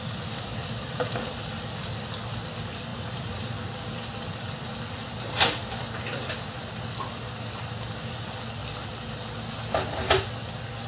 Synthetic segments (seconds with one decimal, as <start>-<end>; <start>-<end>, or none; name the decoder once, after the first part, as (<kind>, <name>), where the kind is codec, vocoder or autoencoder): 0.5-1.5 (vocoder, BigVGAN v2); 2.9-3.5